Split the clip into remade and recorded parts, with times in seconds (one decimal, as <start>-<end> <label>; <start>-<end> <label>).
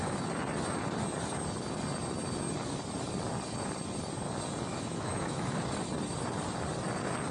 0.0-4.7 recorded; 4.7-5.6 remade; 5.6-7.3 recorded